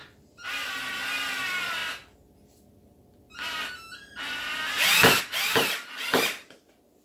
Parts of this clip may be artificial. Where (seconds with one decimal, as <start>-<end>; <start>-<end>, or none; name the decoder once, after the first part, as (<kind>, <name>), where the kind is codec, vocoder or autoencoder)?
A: none